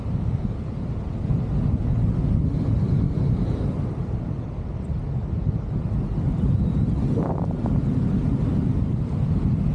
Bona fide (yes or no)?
yes